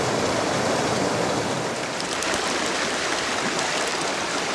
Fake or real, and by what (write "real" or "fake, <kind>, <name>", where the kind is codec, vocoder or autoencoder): real